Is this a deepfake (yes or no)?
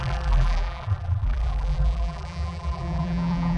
yes